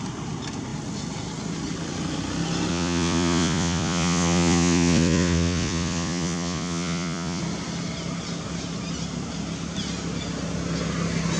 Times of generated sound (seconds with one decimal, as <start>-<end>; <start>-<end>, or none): 2.7-7.4